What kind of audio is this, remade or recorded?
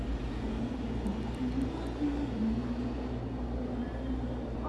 recorded